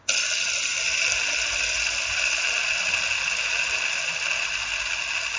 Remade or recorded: recorded